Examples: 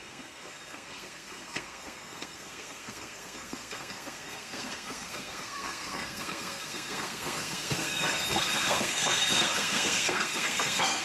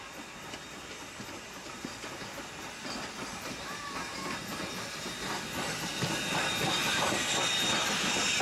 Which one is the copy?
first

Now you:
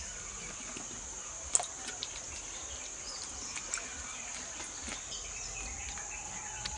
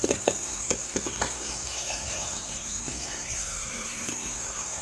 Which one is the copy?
second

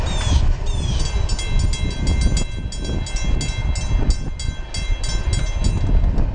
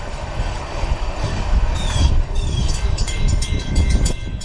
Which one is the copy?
second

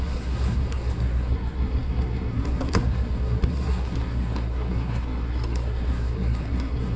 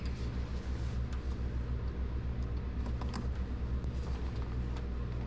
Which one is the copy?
first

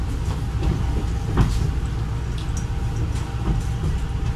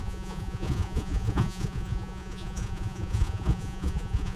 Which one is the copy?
second